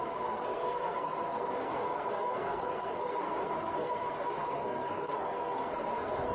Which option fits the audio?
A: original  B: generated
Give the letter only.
B